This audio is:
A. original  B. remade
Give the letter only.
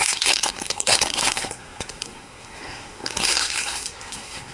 B